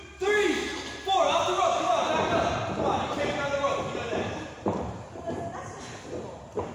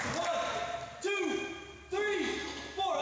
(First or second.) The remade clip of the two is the first